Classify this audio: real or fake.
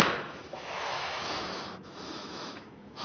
fake